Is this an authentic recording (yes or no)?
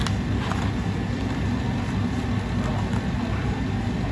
yes